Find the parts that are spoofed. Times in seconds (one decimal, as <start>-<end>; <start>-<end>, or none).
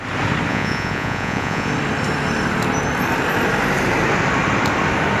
0.5-1.7